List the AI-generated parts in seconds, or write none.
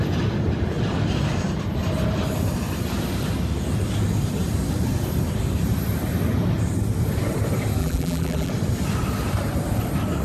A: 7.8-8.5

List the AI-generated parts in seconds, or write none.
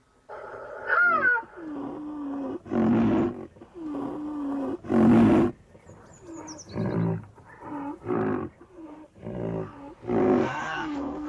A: 10.2-11.3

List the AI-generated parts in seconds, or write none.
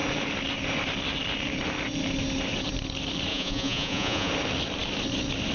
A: 3.3-4.3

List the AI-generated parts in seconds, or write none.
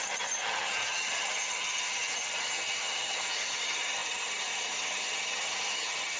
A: 0.0-6.2